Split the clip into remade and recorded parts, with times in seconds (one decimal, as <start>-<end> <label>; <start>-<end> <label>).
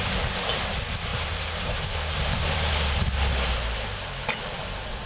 0.0-1.1 recorded; 1.1-2.7 remade; 2.7-5.1 recorded